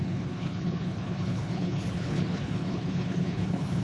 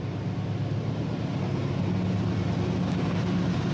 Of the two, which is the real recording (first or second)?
second